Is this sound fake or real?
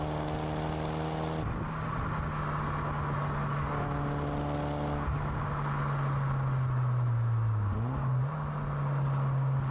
real